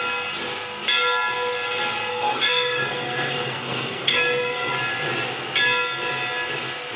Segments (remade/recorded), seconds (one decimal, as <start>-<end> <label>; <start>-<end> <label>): 0.0-2.1 recorded; 2.1-4.8 remade; 4.8-7.0 recorded